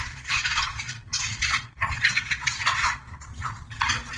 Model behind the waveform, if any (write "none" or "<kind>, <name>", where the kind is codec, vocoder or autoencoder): vocoder, Vocos